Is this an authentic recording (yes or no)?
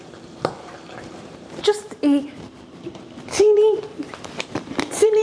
no